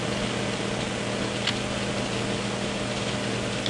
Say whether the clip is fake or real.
real